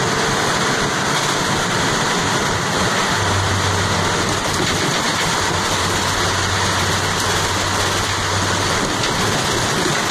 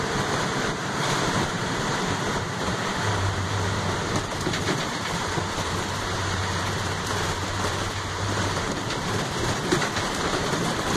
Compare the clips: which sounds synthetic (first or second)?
second